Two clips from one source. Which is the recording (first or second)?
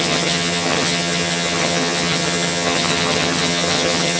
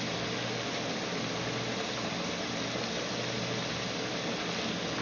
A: second